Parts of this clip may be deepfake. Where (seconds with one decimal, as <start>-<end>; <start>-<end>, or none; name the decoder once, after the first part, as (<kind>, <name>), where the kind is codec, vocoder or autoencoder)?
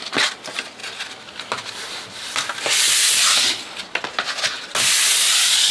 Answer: none